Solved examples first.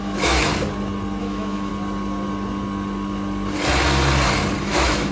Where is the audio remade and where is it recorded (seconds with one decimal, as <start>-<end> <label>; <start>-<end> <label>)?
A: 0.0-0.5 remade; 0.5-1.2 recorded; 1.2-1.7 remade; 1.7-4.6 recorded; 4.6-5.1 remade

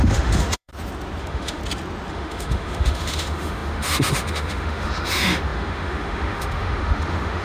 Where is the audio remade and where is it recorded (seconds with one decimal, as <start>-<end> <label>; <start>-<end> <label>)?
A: 0.0-0.7 remade; 0.7-1.2 recorded; 1.2-1.6 remade; 1.6-2.1 recorded; 2.1-7.4 remade

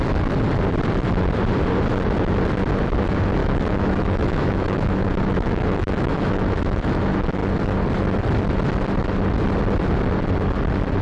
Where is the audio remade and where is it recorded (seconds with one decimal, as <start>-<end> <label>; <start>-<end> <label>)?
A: 0.0-3.4 recorded; 3.4-7.0 remade; 7.0-11.0 recorded

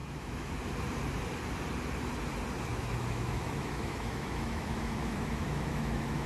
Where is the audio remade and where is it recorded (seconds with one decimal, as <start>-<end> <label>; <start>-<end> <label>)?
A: 0.0-0.5 remade; 0.5-2.7 recorded; 2.7-6.3 remade

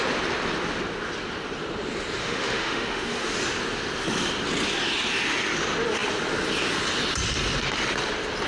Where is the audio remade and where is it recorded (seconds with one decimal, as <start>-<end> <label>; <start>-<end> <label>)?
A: 0.0-2.2 recorded; 2.2-3.3 remade; 3.3-8.5 recorded

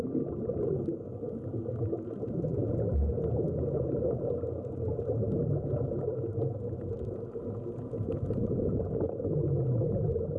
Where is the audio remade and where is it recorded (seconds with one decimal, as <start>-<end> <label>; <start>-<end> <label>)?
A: 0.0-10.4 recorded

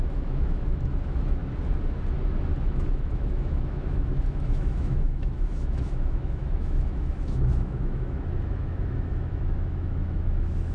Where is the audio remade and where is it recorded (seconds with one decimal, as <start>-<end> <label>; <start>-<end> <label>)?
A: 0.0-1.4 remade; 1.4-2.6 recorded; 2.6-10.7 remade